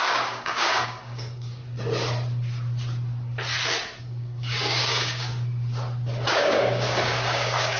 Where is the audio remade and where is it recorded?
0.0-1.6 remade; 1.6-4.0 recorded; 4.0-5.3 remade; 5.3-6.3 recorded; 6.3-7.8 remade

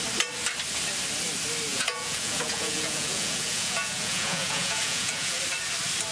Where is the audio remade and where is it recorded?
0.0-1.7 recorded; 1.7-5.4 remade; 5.4-6.1 recorded

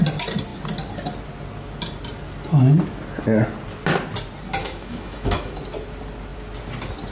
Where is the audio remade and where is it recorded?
0.0-4.6 recorded; 4.6-5.6 remade; 5.6-7.1 recorded